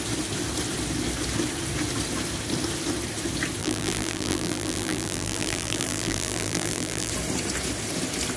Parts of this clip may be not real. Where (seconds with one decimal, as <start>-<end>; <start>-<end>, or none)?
3.6-7.1